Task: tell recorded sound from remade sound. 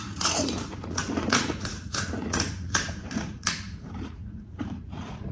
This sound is remade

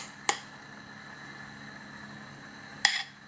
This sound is recorded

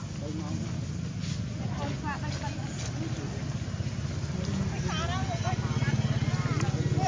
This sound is recorded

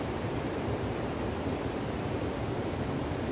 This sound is recorded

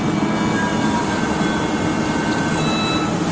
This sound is recorded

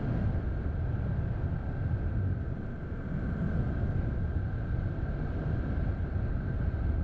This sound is recorded